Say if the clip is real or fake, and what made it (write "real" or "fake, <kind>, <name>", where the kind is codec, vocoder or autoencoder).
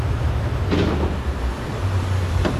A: real